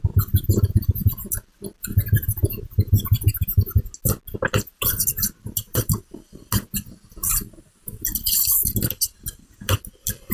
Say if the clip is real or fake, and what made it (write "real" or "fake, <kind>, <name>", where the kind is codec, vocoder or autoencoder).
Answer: real